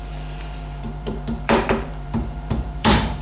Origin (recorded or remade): remade